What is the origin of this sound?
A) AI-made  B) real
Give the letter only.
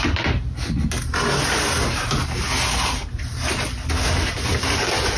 B